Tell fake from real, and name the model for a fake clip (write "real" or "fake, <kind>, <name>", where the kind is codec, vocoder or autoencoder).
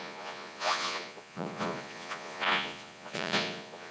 fake, vocoder, Vocos